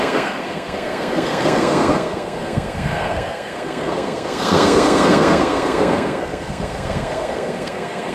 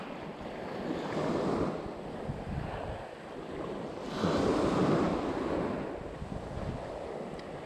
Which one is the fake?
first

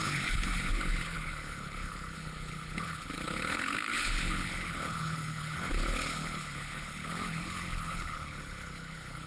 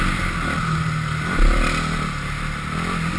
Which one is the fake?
first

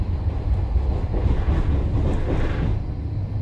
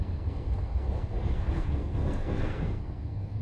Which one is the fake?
second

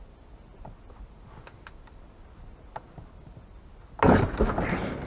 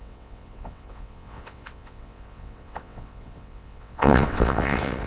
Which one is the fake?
second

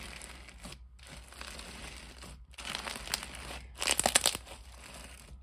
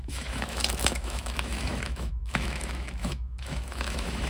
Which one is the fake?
second